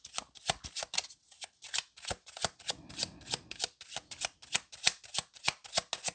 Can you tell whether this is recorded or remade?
recorded